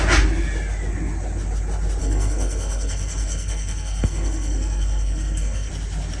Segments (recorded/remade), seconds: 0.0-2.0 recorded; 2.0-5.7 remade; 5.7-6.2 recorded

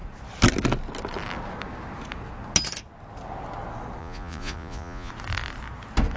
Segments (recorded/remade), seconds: 0.0-4.0 recorded; 4.0-5.1 remade; 5.1-6.2 recorded

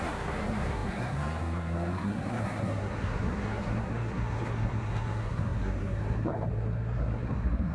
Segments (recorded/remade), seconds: 0.0-7.7 remade

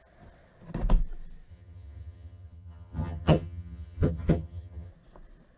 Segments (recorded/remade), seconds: 0.0-1.5 recorded; 1.5-4.9 remade; 4.9-5.6 recorded

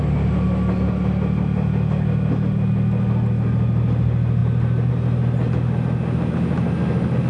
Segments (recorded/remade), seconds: 0.0-7.3 recorded

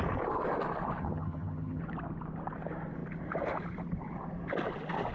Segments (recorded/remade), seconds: 0.0-1.0 recorded; 1.0-1.8 remade; 1.8-5.1 recorded

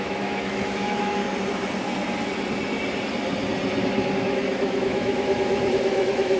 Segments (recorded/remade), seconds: 0.0-1.2 remade; 1.2-4.1 recorded; 4.1-6.4 remade